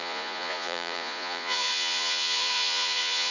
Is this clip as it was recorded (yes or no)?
no